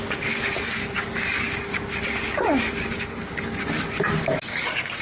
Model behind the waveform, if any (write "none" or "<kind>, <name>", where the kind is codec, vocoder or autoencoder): codec, DAC